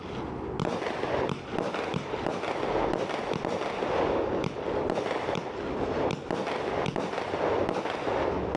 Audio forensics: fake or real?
real